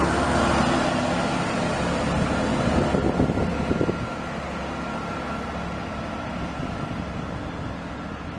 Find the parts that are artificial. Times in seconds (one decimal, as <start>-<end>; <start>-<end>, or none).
2.5-3.4